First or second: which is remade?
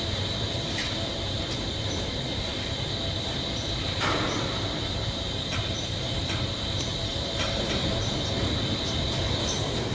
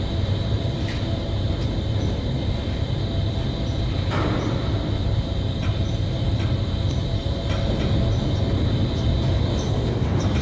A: first